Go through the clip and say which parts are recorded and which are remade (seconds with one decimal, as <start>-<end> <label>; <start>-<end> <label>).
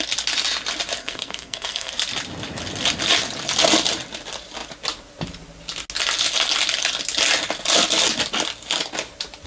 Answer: 0.0-1.0 recorded; 1.0-1.9 remade; 1.9-9.5 recorded